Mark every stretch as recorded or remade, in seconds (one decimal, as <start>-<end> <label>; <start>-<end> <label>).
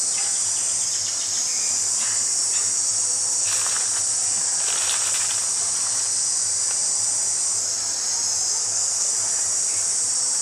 0.0-8.6 recorded; 8.6-9.1 remade; 9.1-10.4 recorded